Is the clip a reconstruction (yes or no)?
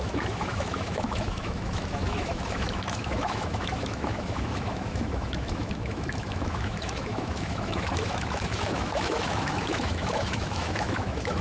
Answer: yes